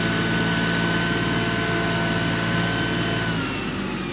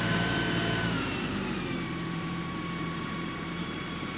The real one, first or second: first